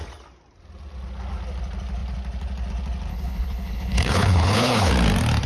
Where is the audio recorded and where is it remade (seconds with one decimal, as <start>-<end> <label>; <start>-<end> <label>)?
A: 0.0-3.1 recorded; 3.1-4.9 remade; 4.9-5.5 recorded